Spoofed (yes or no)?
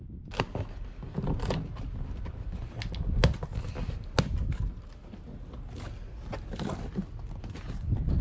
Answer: no